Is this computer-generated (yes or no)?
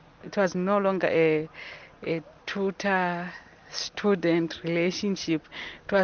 no